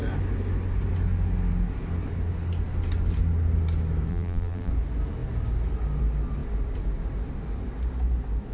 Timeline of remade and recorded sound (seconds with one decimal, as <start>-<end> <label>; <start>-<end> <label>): 0.0-4.1 recorded; 4.1-4.7 remade; 4.7-8.5 recorded